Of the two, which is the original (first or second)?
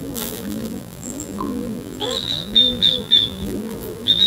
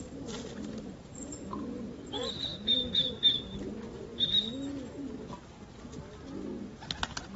second